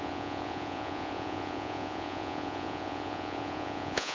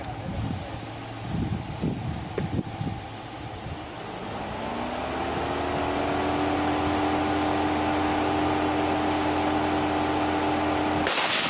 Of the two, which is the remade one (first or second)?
first